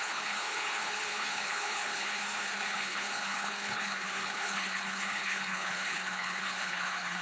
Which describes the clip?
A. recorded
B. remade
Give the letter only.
B